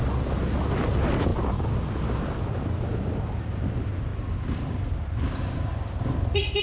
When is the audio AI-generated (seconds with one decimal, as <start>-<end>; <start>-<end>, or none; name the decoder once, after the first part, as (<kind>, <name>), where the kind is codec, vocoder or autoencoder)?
none